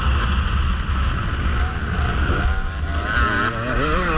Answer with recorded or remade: recorded